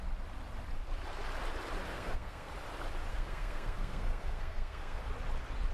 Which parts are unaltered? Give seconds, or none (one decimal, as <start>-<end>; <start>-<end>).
0.0-1.9; 2.5-3.1; 5.0-5.7